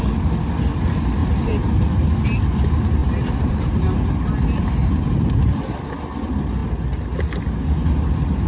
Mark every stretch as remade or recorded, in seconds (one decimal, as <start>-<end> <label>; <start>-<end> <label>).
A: 0.0-1.2 recorded; 1.2-1.7 remade; 1.7-3.0 recorded; 3.0-3.7 remade; 3.7-4.8 recorded; 4.8-5.6 remade; 5.6-8.5 recorded